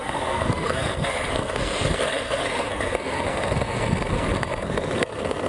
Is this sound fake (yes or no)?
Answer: yes